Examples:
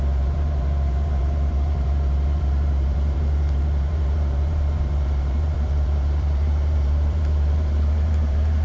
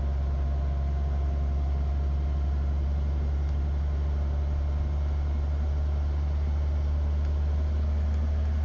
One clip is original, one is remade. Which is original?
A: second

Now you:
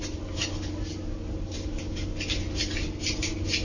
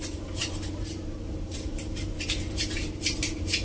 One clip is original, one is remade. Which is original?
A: first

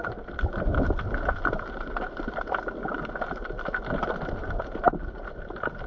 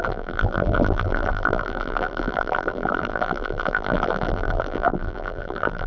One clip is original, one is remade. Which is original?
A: first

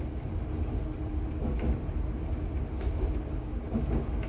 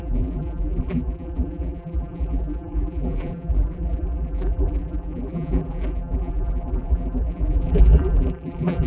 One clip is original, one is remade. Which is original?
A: first